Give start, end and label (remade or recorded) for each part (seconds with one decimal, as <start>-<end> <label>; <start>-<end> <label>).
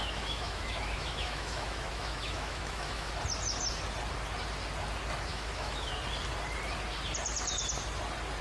0.0-3.1 remade; 3.1-5.3 recorded; 5.3-5.9 remade; 5.9-8.4 recorded